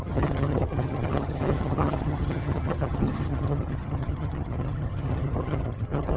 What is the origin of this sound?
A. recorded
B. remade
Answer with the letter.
B